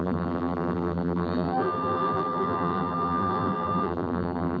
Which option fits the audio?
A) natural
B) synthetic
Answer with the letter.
B